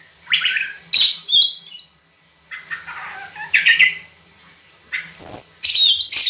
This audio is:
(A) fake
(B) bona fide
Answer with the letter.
B